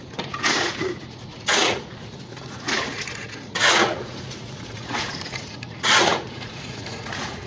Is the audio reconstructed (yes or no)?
yes